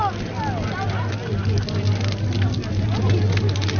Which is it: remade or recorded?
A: recorded